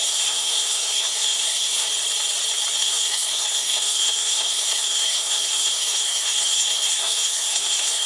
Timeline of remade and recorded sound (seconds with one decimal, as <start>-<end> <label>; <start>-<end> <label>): 0.0-1.9 remade; 1.9-2.8 recorded; 2.8-8.1 remade